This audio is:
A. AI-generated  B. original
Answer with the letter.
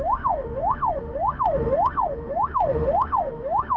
A